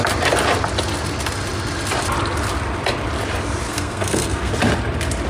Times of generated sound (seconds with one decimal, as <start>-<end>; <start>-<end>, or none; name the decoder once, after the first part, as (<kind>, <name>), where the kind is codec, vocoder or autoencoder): 3.7-4.5 (codec, SNAC)